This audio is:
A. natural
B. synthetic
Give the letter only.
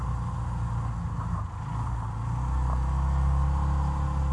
A